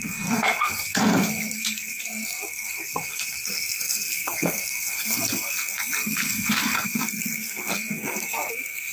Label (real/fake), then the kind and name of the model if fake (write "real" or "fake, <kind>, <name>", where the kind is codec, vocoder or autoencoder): fake, codec, SNAC